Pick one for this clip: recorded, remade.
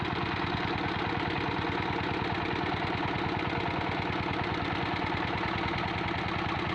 recorded